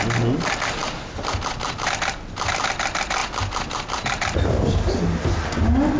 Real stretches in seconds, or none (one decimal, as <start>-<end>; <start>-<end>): 0.0-6.0